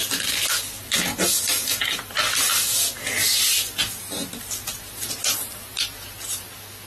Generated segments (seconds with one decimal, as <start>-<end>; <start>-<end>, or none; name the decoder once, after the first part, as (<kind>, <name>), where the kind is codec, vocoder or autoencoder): 0.0-2.5 (vocoder, BigVGAN v2); 3.3-6.5